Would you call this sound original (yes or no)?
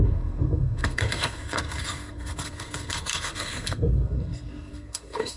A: no